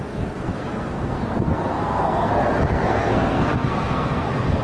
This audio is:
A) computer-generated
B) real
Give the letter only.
A